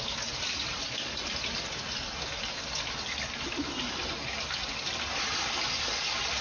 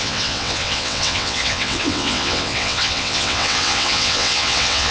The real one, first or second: first